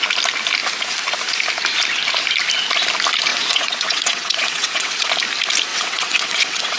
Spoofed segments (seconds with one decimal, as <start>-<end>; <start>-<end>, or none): 3.3-5.1; 5.7-6.8